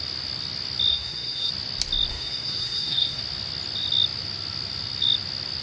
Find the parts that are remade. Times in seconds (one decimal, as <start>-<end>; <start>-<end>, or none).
0.9-1.5; 2.1-3.2